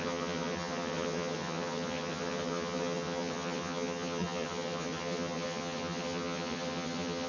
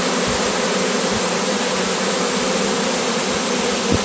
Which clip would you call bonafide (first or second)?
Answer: second